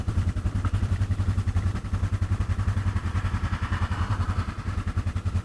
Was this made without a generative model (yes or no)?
no